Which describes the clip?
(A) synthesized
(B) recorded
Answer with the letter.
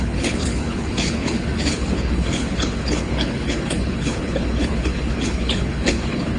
A